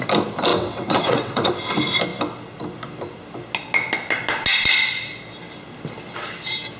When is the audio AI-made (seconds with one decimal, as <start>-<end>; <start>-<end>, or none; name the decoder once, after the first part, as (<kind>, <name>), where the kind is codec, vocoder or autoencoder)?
0.5-1.5 (vocoder, WaveNeXt)